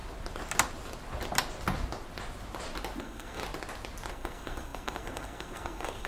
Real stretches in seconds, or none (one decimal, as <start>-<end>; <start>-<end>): 0.0-3.0; 3.4-4.1